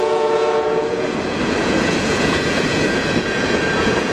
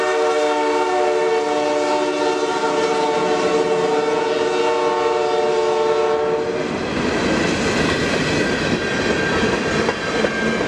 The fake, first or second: first